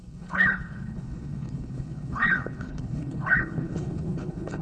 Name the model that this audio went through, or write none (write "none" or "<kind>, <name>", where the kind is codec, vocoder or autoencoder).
codec, HILCodec